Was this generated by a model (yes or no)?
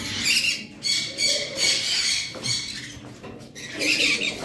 no